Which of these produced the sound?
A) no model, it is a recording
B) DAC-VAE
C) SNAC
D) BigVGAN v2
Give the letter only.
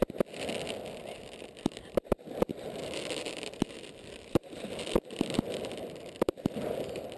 D